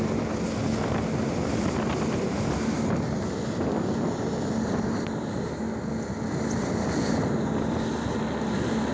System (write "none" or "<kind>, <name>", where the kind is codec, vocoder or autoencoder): none